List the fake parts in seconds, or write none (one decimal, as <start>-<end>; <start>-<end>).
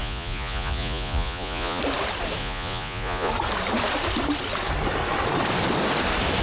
0.0-1.8; 2.4-3.3